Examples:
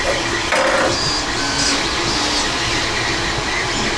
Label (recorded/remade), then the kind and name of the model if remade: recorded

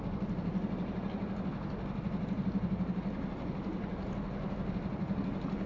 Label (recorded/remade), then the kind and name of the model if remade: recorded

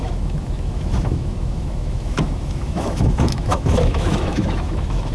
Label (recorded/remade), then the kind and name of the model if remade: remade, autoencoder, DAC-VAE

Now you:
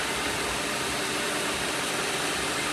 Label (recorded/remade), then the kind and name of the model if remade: recorded